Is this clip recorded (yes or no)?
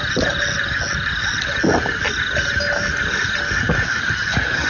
yes